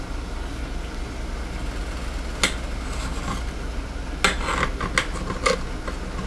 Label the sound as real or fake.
real